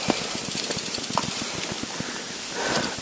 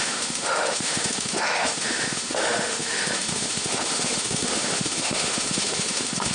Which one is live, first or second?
first